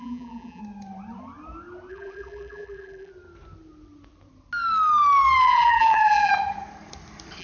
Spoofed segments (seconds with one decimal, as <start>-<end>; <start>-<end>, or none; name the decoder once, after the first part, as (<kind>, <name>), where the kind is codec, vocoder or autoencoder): 0.0-0.6 (vocoder, BigVGAN v2); 1.9-3.1; 5.4-6.3